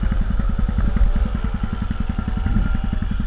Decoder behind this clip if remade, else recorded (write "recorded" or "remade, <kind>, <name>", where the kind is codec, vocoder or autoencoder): recorded